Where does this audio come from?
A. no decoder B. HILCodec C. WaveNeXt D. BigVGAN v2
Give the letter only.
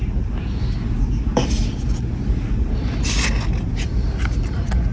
A